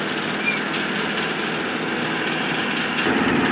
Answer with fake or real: real